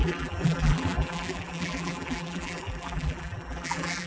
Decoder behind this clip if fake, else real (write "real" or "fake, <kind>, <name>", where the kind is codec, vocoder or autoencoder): fake, vocoder, BigVGAN v2